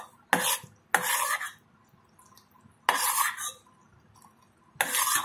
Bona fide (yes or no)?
yes